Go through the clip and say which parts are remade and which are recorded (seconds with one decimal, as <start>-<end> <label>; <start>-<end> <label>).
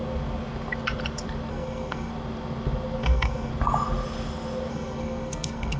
0.0-1.5 recorded; 1.5-2.1 remade; 2.1-3.0 recorded; 3.0-3.5 remade; 3.5-4.7 recorded; 4.7-5.8 remade